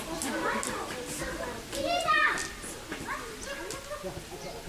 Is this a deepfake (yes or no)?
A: no